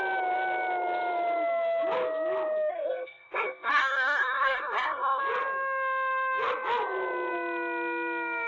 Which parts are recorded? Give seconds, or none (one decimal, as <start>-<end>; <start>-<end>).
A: 0.0-2.7; 5.2-8.5